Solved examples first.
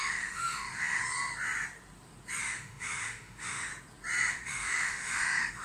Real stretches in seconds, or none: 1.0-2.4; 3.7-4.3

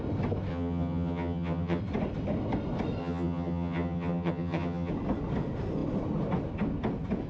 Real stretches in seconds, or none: 0.0-0.5; 1.8-3.0; 4.9-7.3

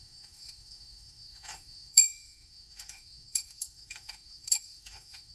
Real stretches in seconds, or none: none

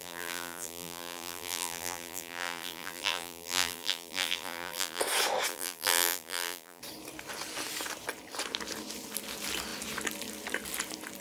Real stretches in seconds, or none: 5.0-5.5; 6.8-11.2

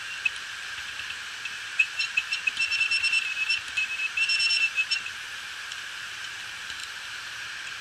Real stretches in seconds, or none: none

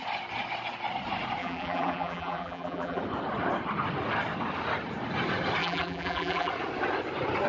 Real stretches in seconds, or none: 0.0-1.4; 3.0-5.6; 6.5-7.5